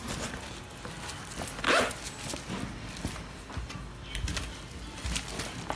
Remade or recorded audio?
recorded